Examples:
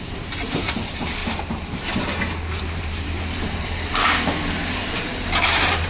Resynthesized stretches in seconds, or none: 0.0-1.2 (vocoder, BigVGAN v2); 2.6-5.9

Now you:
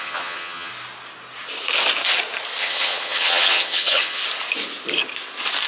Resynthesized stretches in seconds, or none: 0.0-0.7 (vocoder, HiFi-GAN); 2.6-4.2

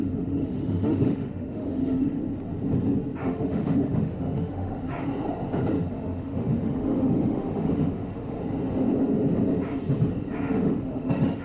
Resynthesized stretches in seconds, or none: 0.0-2.2 (autoencoder, DAC-VAE); 3.2-4.7; 5.9-8.4; 10.4-11.4